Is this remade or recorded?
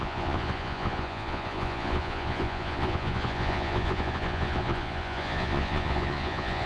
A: remade